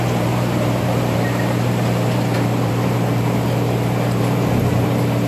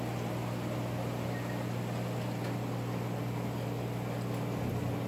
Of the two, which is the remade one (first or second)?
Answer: first